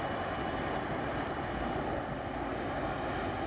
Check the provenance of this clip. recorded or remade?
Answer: recorded